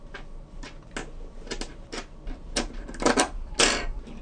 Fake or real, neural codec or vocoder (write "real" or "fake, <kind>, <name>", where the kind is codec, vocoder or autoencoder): real